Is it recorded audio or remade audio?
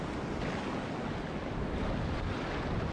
recorded